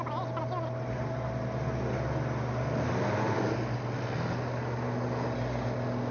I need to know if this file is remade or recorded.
recorded